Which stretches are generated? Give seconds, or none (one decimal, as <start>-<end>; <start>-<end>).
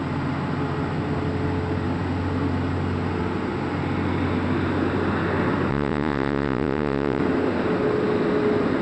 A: 5.7-7.2